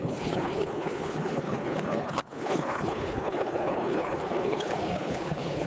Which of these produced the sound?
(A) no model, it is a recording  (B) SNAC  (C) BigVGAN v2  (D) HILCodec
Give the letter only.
D